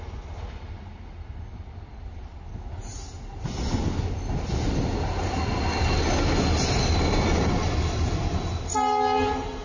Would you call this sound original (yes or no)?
yes